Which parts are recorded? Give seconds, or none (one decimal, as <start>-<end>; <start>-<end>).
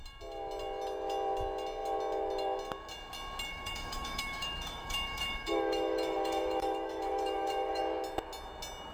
0.0-3.5; 7.8-8.9